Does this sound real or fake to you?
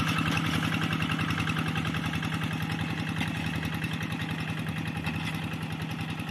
real